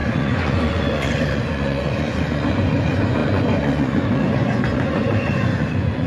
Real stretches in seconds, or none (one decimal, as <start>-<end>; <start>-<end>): none